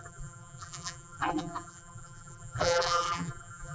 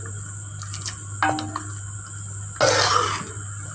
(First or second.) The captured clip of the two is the second